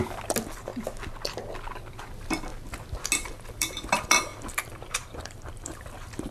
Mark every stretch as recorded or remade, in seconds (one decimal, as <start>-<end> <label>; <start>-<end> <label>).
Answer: 0.0-0.7 remade; 0.7-1.7 recorded; 1.7-2.5 remade; 2.5-3.3 recorded; 3.3-6.3 remade

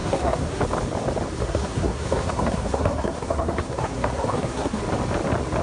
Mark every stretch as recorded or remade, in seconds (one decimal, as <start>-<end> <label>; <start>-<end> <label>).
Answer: 0.0-0.6 remade; 0.6-1.4 recorded; 1.4-4.8 remade; 4.8-5.6 recorded

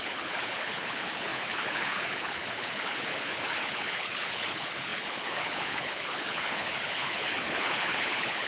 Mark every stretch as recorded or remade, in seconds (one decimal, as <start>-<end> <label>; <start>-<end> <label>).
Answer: 0.0-8.5 remade

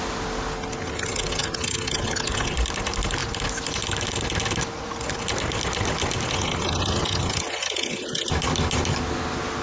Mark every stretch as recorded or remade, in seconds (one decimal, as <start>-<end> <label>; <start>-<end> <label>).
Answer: 0.0-9.6 recorded

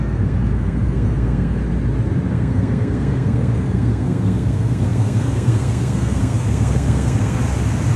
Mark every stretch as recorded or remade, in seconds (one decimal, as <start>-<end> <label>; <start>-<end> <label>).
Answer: 0.0-1.6 remade; 1.6-2.3 recorded; 2.3-7.4 remade; 7.4-8.0 recorded